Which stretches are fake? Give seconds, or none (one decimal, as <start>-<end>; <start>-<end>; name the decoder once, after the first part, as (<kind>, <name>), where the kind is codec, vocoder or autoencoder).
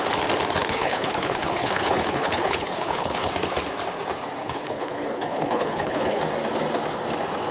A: 0.6-3.3 (codec, HILCodec); 4.4-6.2